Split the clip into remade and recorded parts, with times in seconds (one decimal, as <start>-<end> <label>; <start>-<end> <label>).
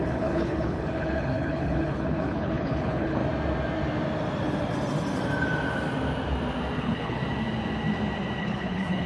0.0-3.2 remade; 3.2-6.8 recorded; 6.8-7.2 remade; 7.2-8.4 recorded; 8.4-9.1 remade